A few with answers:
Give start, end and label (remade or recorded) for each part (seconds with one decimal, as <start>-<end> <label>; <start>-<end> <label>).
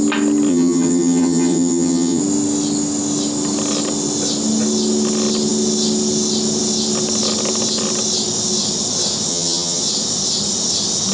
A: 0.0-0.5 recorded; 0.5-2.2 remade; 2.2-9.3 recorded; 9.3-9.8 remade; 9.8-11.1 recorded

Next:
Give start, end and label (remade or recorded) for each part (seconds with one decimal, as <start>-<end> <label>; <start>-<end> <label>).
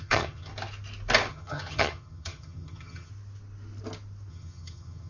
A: 0.0-0.5 remade; 0.5-1.3 recorded; 1.3-3.1 remade; 3.1-4.3 recorded; 4.3-5.1 remade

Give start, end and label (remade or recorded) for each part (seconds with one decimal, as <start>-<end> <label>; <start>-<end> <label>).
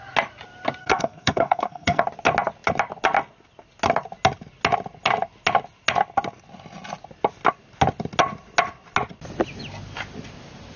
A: 0.0-0.8 recorded; 0.8-2.0 remade; 2.0-10.8 recorded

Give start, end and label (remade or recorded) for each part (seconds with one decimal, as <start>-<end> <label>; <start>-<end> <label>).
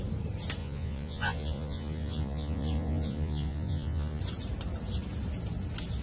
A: 0.0-0.6 recorded; 0.6-4.2 remade; 4.2-6.0 recorded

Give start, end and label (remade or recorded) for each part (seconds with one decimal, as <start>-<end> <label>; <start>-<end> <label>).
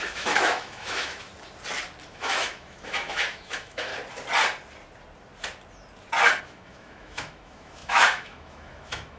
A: 0.0-1.3 remade; 1.3-2.1 recorded; 2.1-3.9 remade; 3.9-6.4 recorded; 6.4-9.2 remade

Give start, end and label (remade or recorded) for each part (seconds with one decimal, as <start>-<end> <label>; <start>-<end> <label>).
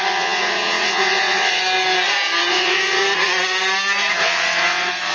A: 0.0-1.6 remade; 1.6-2.5 recorded; 2.5-3.0 remade; 3.0-4.1 recorded; 4.1-5.1 remade